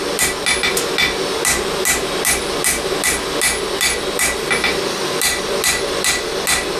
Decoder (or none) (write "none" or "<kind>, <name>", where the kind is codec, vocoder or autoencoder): none